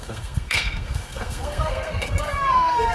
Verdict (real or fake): fake